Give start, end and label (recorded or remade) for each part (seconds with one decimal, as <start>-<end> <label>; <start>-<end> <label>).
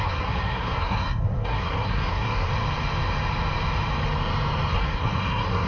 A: 0.0-2.5 remade; 2.5-4.7 recorded; 4.7-5.7 remade